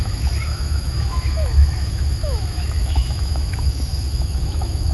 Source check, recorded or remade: remade